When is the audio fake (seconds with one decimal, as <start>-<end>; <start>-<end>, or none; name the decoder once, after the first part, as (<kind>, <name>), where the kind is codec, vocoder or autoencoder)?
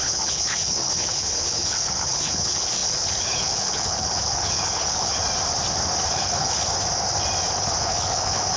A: 0.0-5.2 (codec, HILCodec); 6.1-6.6; 7.8-8.6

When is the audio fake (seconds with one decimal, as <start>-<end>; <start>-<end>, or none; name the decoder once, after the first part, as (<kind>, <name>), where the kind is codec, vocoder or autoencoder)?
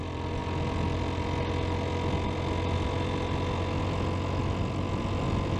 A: none